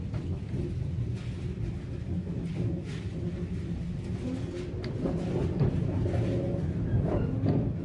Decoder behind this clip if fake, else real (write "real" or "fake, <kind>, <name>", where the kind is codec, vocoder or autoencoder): real